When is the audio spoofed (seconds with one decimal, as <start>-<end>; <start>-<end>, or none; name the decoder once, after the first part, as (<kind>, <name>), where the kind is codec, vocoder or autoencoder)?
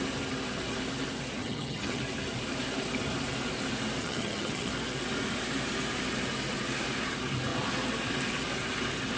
1.4-2.0 (vocoder, HiFi-GAN); 4.0-4.7